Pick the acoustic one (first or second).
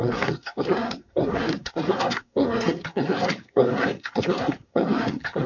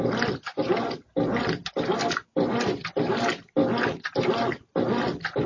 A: second